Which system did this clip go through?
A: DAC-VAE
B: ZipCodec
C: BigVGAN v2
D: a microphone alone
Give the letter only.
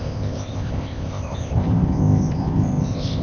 B